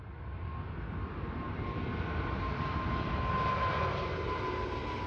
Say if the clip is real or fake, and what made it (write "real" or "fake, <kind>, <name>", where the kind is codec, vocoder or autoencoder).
real